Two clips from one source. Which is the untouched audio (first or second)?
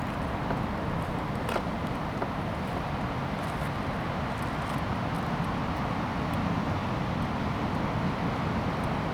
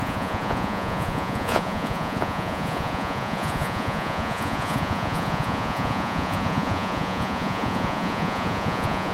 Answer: first